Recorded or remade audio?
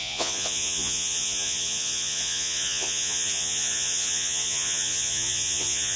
remade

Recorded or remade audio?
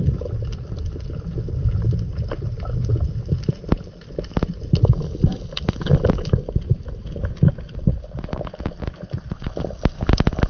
recorded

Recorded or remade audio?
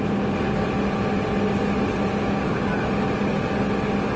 recorded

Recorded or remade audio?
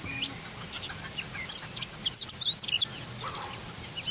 recorded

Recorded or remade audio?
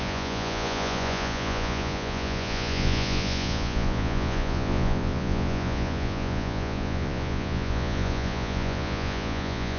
remade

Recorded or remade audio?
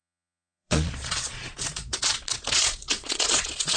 remade